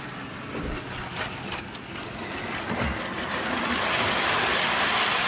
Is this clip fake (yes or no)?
no